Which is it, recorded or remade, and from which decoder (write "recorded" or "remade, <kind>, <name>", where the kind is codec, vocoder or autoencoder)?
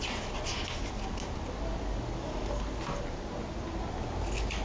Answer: recorded